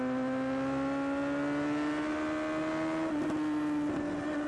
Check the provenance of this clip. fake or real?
real